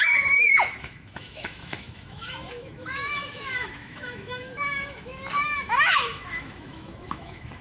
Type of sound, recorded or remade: remade